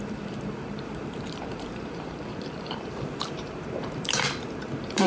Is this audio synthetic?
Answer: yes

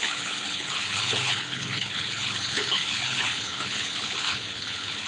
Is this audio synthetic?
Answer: yes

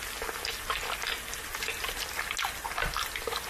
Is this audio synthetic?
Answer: no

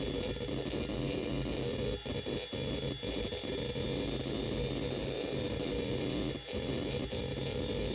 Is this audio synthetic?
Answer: no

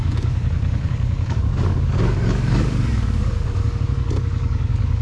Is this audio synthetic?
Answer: yes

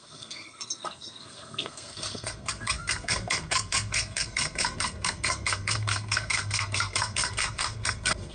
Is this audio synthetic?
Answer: yes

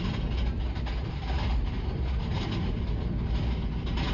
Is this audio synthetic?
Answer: no